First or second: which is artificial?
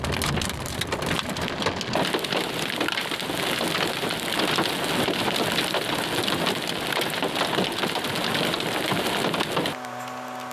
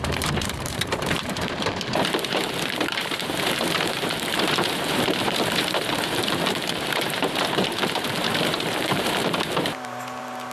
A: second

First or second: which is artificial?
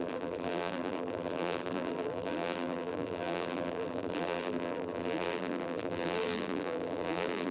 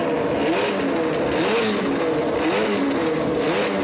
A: first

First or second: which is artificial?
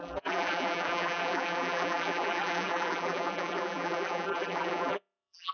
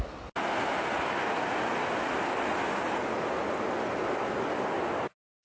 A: first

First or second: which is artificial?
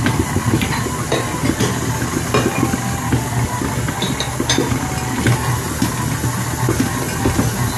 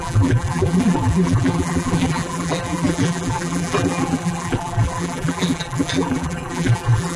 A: second